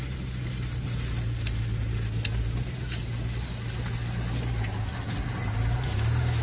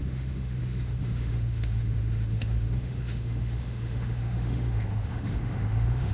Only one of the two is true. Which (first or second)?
first